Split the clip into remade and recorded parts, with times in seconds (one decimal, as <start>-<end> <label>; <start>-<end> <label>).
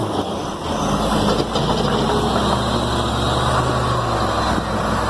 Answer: 0.0-5.1 recorded